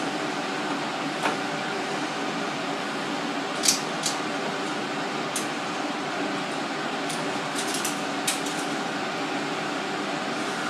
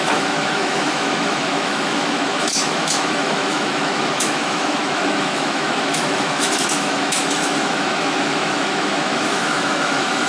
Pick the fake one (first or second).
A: second